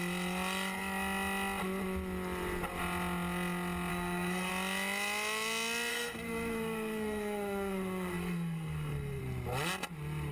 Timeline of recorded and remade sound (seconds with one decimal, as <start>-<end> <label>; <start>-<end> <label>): 0.0-3.9 recorded; 3.9-4.5 remade; 4.5-5.9 recorded; 5.9-9.2 remade; 9.2-10.3 recorded